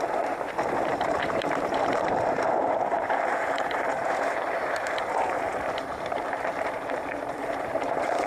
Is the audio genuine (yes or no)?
no